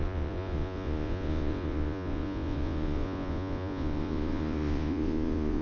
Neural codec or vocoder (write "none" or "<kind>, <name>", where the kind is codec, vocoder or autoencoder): vocoder, Vocos